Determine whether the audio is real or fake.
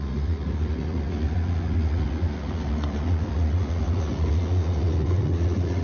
fake